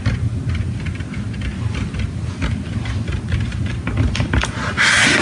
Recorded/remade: recorded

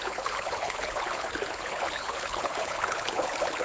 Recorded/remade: remade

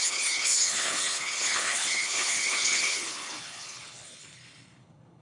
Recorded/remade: remade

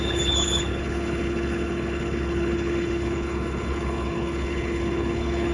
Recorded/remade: remade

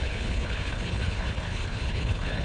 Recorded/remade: remade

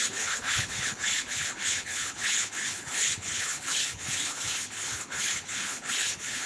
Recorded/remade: remade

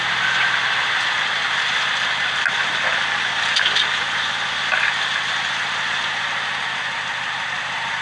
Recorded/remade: recorded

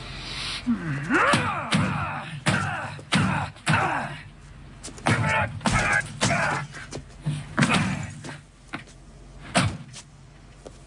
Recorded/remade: recorded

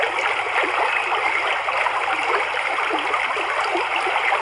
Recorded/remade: recorded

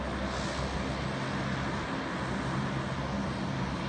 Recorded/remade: recorded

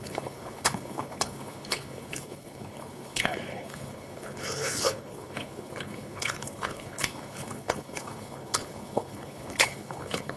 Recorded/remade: remade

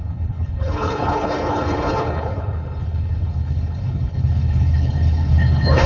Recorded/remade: remade